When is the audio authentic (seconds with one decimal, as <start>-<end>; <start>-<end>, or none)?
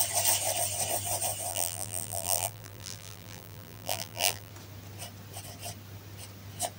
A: 0.0-1.5; 4.5-6.8